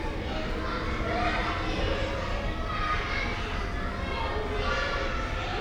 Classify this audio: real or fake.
real